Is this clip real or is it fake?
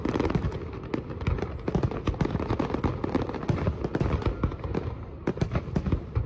real